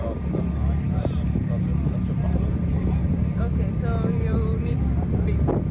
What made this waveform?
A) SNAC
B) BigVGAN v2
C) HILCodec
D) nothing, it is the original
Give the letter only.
D